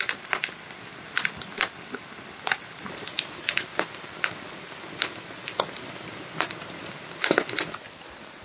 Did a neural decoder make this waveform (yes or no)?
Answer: no